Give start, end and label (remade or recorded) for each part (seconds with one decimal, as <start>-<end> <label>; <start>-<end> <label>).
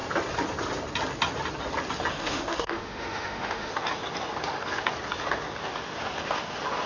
0.0-2.1 recorded; 2.1-3.7 remade; 3.7-6.9 recorded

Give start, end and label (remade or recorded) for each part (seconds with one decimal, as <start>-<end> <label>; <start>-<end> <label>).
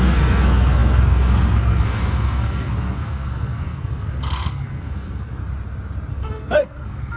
0.0-5.4 remade; 5.4-6.1 recorded; 6.1-7.2 remade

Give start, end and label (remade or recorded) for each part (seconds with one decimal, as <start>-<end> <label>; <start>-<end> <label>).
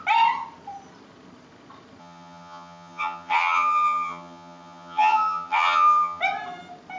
0.0-2.0 recorded; 2.0-6.2 remade; 6.2-7.0 recorded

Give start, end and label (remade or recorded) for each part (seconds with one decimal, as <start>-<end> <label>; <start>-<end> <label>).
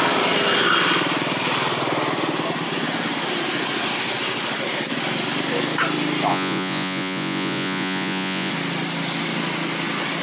0.0-6.3 recorded; 6.3-8.5 remade; 8.5-10.2 recorded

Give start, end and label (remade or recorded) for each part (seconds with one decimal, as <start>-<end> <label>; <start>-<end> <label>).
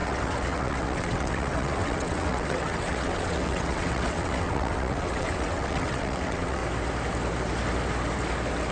0.0-6.6 remade; 6.6-8.7 recorded